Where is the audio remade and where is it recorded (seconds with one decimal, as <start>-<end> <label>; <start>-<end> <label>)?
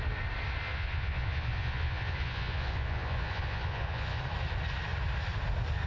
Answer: 0.0-0.7 recorded; 0.7-4.2 remade; 4.2-5.9 recorded